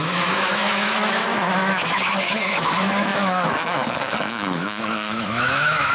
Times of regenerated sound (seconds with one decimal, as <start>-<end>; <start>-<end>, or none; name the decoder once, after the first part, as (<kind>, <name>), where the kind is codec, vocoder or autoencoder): 0.0-5.9 (autoencoder, DAC-VAE)

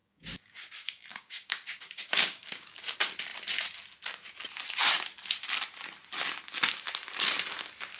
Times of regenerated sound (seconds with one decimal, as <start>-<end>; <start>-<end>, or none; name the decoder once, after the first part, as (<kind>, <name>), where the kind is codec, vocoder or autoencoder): 0.0-2.8 (codec, DAC)

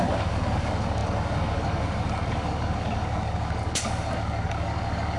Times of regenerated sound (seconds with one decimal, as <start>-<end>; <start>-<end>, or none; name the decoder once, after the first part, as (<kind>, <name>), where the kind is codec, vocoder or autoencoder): 0.0-5.2 (codec, DAC)